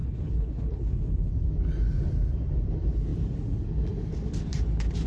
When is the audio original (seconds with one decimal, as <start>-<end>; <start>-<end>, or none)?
1.3-5.1